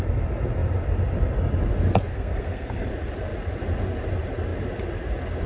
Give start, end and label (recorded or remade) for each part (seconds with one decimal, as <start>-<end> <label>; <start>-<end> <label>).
0.0-2.1 recorded; 2.1-2.9 remade; 2.9-5.5 recorded